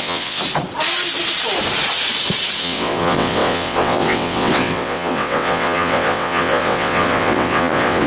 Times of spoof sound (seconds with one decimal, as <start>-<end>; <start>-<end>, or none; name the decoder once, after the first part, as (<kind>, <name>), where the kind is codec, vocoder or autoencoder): 0.0-0.4 (vocoder, WaveNeXt); 2.6-8.1